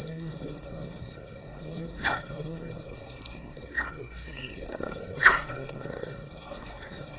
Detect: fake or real fake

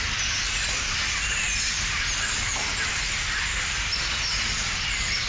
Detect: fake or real real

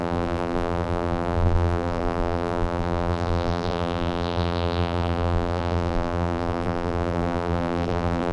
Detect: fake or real fake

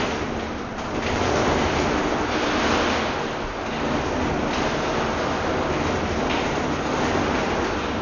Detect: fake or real real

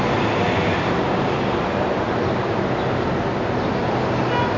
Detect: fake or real real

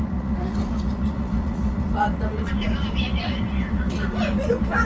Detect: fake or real fake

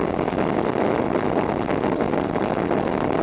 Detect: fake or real real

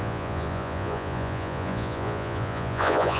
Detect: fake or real fake